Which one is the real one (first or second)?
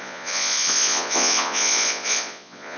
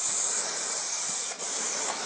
second